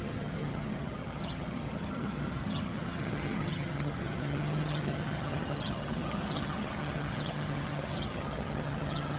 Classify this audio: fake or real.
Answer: fake